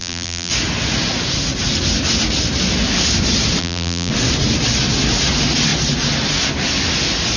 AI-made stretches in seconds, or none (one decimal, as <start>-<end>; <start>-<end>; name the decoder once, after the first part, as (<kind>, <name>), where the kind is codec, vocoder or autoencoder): 0.0-0.5 (vocoder, BigVGAN v2); 3.6-4.1